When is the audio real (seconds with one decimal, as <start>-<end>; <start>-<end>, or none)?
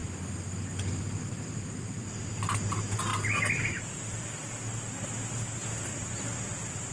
3.1-3.6; 5.9-6.5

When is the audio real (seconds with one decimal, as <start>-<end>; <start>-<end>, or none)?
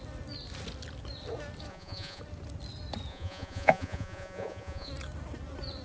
0.0-1.7; 2.2-3.1; 4.9-5.8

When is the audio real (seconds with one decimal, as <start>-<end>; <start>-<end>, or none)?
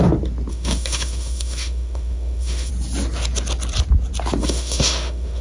0.0-0.5; 2.7-4.4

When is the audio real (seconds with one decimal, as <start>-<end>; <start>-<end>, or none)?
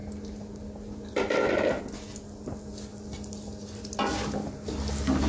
0.0-5.3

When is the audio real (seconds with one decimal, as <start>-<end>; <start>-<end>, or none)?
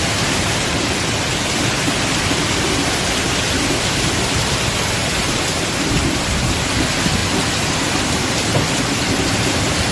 0.0-9.9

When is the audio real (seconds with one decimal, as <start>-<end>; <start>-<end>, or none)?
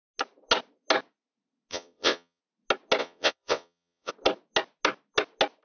0.0-1.7; 2.4-3.0; 4.1-5.6